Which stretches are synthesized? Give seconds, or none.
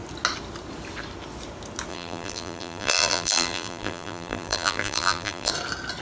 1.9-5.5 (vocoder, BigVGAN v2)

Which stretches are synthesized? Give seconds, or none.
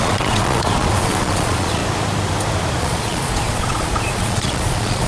0.0-1.8 (vocoder, Vocos); 2.8-5.1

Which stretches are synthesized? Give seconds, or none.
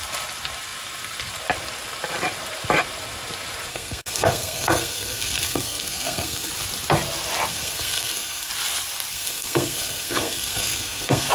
3.7-6.5 (codec, SNAC); 7.5-8.5; 9.1-11.3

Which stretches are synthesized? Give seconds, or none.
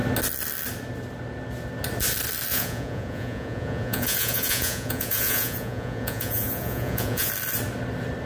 2.5-7.3 (vocoder, Vocos)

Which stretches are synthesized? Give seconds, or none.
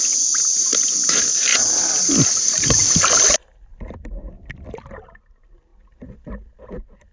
0.0-1.5 (vocoder, BigVGAN v2); 2.2-5.7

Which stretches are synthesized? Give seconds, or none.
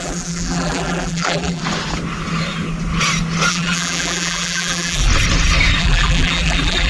0.0-1.6 (vocoder, BigVGAN v2); 3.5-5.1; 5.8-6.9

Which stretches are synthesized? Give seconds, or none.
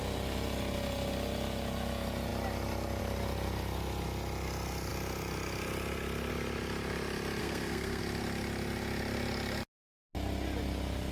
7.4-8.0 (codec, SNAC)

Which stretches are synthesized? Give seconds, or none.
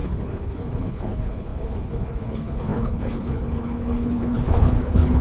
0.0-5.2 (codec, HILCodec)